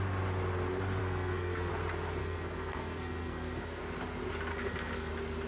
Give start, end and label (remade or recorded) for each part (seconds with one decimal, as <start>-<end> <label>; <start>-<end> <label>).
0.0-1.0 recorded; 1.0-1.7 remade; 1.7-2.2 recorded; 2.2-3.8 remade; 3.8-4.5 recorded; 4.5-5.1 remade; 5.1-5.5 recorded